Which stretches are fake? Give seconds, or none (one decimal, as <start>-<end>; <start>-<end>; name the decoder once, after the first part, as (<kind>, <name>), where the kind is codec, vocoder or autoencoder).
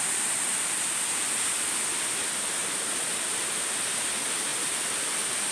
2.6-3.5 (vocoder, BigVGAN v2); 4.5-5.5